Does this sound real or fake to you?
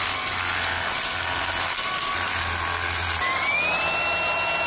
real